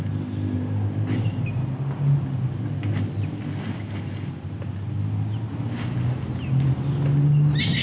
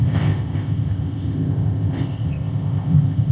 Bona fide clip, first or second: first